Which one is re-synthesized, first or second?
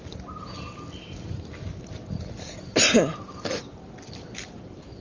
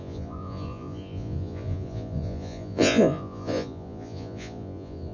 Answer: second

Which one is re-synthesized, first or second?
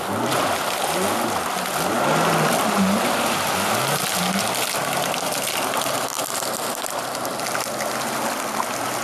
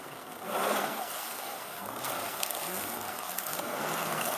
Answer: second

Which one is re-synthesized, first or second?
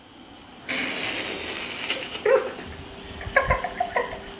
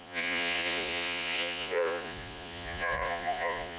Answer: second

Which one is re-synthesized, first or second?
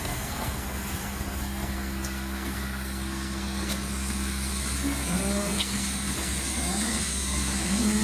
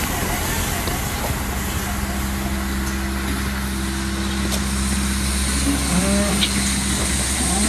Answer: first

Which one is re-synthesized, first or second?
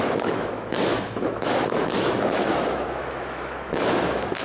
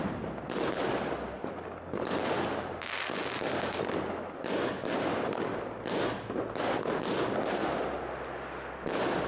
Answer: first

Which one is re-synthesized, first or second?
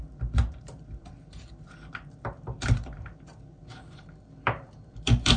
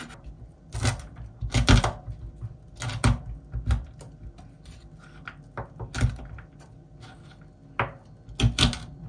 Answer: first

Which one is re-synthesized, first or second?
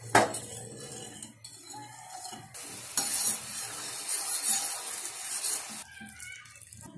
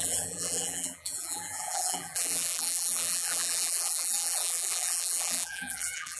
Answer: second